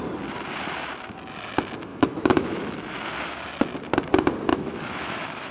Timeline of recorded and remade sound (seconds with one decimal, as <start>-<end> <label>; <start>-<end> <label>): 0.0-1.9 recorded; 1.9-3.1 remade; 3.1-4.5 recorded; 4.5-5.5 remade